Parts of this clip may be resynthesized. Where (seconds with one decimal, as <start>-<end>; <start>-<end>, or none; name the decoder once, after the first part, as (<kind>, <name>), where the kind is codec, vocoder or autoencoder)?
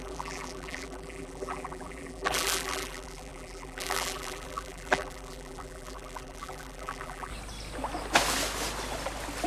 0.0-7.3 (vocoder, BigVGAN v2)